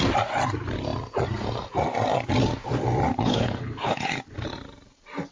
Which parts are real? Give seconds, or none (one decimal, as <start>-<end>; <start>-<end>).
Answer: 0.0-3.1; 4.2-5.3